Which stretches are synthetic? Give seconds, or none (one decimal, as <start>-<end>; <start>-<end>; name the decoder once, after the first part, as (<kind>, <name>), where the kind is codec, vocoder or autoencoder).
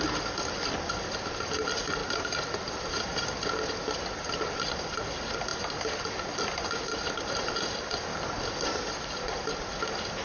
none